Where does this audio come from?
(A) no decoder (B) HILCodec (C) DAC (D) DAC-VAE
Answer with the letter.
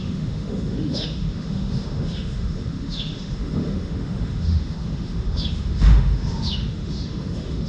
D